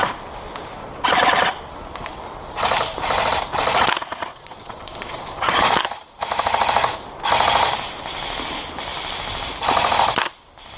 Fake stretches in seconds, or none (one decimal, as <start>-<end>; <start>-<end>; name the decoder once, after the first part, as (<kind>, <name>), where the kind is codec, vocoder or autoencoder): 4.3-5.9 (vocoder, Vocos)